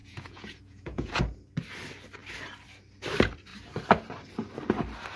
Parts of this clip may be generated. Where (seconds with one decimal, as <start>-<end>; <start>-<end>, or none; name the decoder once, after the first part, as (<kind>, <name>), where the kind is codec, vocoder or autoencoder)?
0.0-1.2 (vocoder, Vocos)